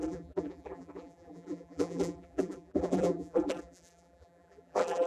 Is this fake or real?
fake